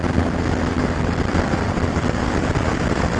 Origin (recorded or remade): recorded